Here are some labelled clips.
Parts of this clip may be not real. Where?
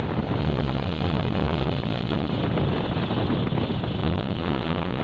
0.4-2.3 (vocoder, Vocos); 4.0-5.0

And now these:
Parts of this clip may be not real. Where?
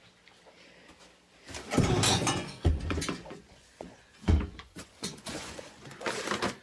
2.1-6.1 (vocoder, Vocos)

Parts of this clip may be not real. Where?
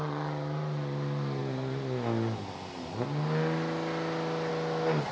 none